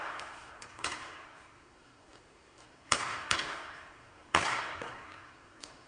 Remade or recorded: remade